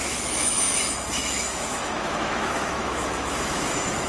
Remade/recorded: remade